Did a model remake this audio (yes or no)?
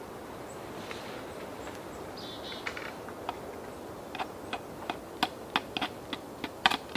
no